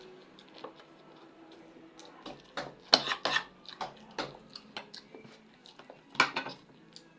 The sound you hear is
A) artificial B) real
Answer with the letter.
B